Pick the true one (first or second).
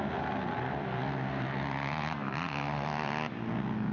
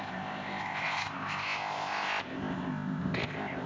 first